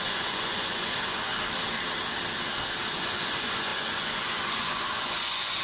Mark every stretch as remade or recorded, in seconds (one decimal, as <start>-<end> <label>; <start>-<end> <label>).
0.0-1.3 remade; 1.3-2.9 recorded; 2.9-5.6 remade

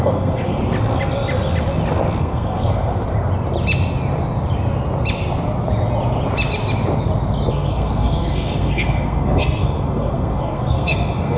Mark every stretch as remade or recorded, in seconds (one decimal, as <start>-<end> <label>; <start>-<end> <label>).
0.0-0.6 remade; 0.6-2.2 recorded; 2.2-2.9 remade; 2.9-7.5 recorded; 7.5-11.4 remade

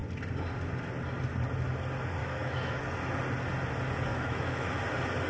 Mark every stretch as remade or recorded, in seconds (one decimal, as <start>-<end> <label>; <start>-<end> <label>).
0.0-2.2 recorded; 2.2-2.8 remade; 2.8-4.1 recorded; 4.1-4.7 remade; 4.7-5.3 recorded

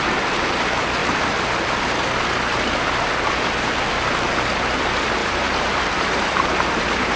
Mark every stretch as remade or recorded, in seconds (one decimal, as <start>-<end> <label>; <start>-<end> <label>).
0.0-5.2 recorded; 5.2-7.2 remade

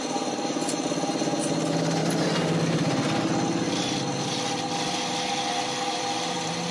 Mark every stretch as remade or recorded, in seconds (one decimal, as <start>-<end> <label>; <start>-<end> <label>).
0.0-2.0 remade; 2.0-6.0 recorded; 6.0-6.7 remade

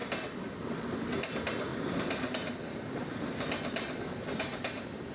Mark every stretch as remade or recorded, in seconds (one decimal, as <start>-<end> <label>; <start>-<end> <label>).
0.0-5.1 recorded

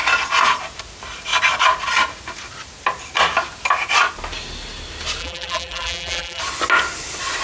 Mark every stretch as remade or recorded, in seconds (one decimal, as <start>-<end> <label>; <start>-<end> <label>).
0.0-5.2 recorded; 5.2-6.4 remade; 6.4-7.4 recorded

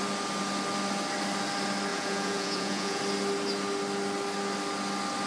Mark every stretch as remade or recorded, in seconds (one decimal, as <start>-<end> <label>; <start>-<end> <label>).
0.0-1.9 recorded; 1.9-3.0 remade; 3.0-5.3 recorded